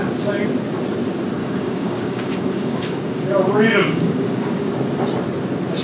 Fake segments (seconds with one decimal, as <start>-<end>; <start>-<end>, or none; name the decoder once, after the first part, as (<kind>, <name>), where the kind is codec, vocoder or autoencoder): 1.4-4.7 (codec, DAC)